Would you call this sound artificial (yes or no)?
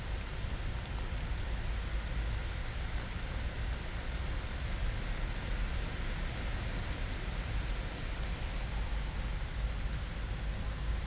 no